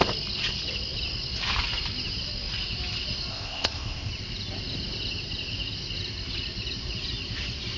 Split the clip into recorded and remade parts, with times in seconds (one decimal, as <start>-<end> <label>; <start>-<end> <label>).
0.0-3.3 recorded; 3.3-4.1 remade; 4.1-7.8 recorded